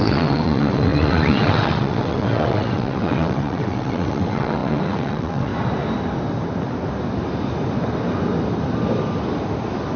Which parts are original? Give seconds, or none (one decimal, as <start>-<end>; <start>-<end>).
5.5-10.0